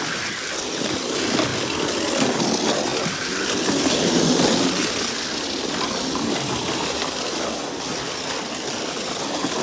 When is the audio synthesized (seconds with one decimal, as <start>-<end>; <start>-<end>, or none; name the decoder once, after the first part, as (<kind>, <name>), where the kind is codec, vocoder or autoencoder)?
none